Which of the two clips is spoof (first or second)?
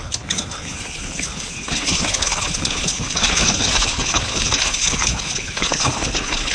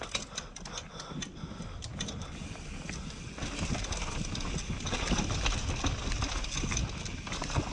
first